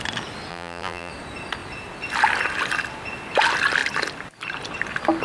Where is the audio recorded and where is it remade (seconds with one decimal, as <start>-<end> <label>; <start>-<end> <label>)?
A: 0.0-0.5 recorded; 0.5-1.1 remade; 1.1-5.2 recorded